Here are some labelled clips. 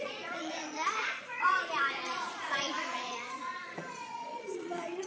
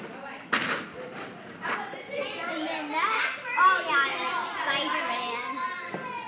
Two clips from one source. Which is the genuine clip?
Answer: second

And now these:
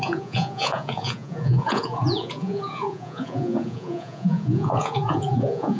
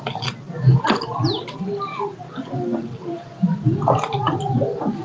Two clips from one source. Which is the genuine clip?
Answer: second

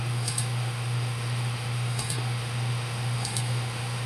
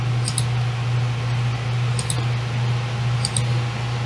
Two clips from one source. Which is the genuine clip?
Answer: second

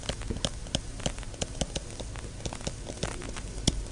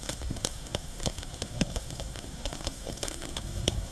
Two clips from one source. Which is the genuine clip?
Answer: first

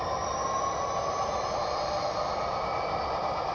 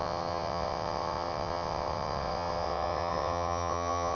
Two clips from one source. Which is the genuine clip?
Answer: first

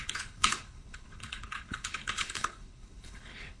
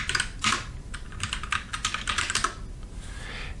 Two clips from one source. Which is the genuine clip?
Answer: second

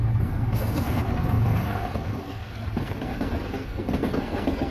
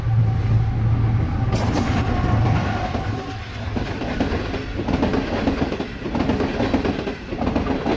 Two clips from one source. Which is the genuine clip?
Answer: second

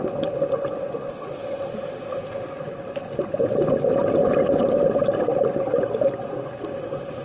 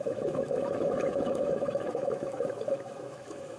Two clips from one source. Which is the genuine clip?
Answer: first